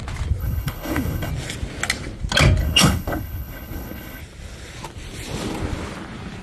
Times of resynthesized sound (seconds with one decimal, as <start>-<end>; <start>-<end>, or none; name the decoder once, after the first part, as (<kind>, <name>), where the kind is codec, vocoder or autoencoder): 0.4-1.3 (codec, HILCodec); 2.6-4.2